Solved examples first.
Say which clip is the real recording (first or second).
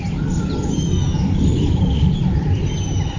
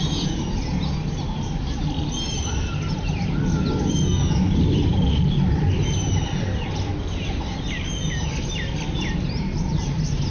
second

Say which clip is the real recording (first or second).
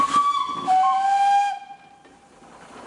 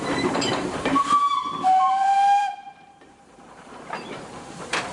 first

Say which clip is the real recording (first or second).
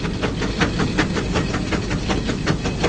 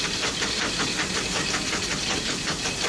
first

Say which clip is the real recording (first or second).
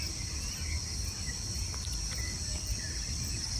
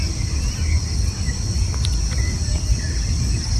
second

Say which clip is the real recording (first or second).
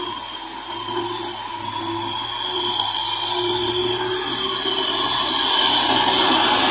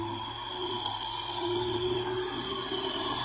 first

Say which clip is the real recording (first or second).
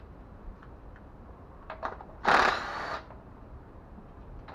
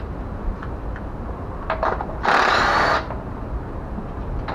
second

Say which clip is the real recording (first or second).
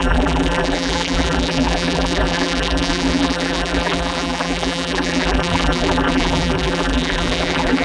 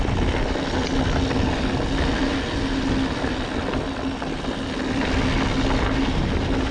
second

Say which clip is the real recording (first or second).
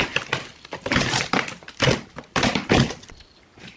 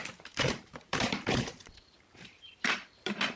first